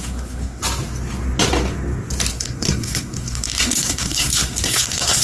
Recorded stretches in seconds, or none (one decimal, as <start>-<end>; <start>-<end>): 0.6-2.3